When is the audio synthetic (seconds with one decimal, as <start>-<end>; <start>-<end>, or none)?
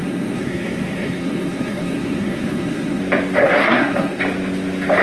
0.0-3.0; 3.4-4.2